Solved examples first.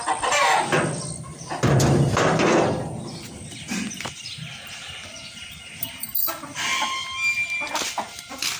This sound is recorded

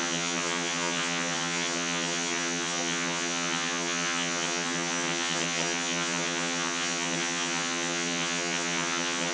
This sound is remade